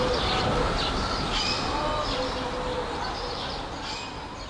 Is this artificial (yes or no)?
no